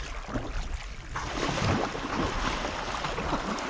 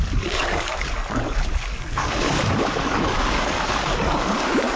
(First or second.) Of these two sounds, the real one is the first